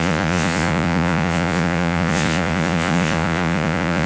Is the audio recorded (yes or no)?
no